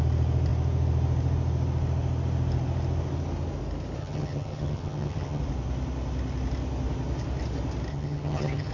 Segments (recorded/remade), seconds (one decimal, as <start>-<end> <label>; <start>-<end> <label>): 0.0-4.0 recorded; 4.0-5.4 remade; 5.4-7.9 recorded; 7.9-8.7 remade